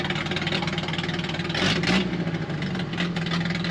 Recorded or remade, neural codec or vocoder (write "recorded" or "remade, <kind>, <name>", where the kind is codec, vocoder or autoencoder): recorded